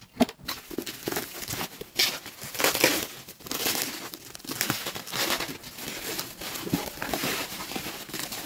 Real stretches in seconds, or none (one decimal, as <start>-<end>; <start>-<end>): 0.0-7.2; 7.9-8.5